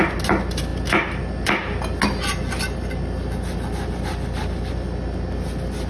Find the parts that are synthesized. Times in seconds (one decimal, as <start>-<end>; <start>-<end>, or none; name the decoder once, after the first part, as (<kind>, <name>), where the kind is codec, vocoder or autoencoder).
none